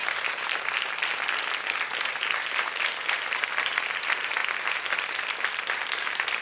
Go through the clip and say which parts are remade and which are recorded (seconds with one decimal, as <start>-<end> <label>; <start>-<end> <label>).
0.0-6.4 recorded